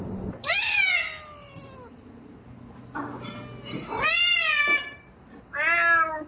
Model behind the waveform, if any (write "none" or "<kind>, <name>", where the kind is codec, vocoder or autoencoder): none